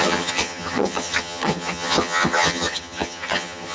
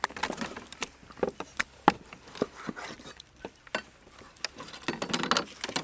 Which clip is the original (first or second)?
second